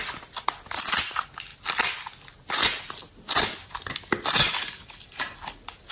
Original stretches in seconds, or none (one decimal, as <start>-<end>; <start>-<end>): 0.0-5.9